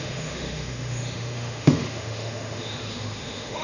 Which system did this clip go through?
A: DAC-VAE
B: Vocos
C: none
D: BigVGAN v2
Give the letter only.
A